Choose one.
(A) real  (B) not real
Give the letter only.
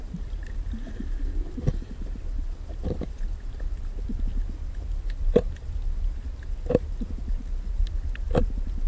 B